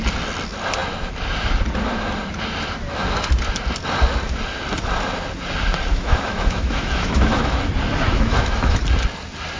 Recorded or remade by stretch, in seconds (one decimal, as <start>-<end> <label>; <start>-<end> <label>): 0.0-5.9 recorded; 5.9-7.6 remade; 7.6-8.1 recorded; 8.1-8.8 remade; 8.8-9.6 recorded